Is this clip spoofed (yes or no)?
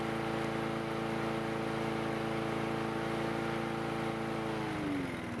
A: no